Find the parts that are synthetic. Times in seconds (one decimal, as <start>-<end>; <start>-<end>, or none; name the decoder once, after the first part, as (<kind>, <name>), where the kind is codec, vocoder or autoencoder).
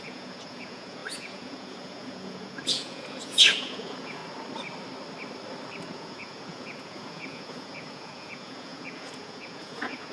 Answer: 0.0-4.2 (vocoder, Vocos); 5.9-10.1